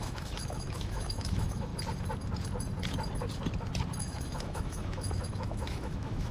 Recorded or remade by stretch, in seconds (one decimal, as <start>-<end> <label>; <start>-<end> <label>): 0.0-1.7 remade; 1.7-4.0 recorded; 4.0-6.3 remade